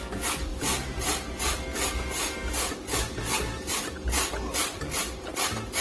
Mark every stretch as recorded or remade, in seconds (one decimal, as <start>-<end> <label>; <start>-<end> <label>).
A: 0.0-0.5 recorded; 0.5-1.3 remade; 1.3-5.8 recorded